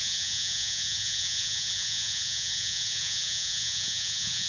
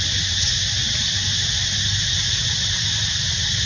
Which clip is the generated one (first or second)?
first